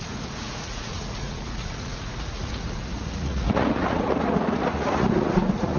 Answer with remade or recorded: remade